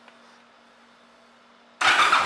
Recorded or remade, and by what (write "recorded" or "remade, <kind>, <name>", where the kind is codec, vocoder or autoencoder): recorded